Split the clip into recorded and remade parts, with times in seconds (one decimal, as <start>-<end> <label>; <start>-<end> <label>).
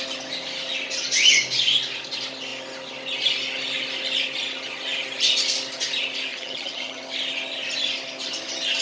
0.0-6.3 recorded; 6.3-7.0 remade; 7.0-8.8 recorded